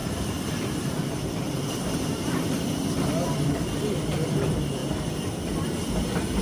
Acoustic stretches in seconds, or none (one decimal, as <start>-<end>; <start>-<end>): none